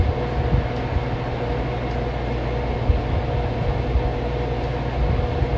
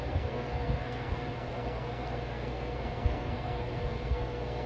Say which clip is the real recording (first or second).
first